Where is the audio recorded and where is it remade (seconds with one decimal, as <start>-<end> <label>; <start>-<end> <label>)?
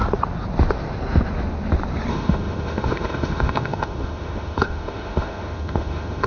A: 0.0-2.1 recorded; 2.1-6.3 remade